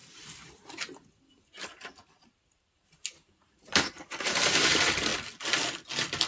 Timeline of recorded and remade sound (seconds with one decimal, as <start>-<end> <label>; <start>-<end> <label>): 0.0-5.1 remade; 5.1-6.3 recorded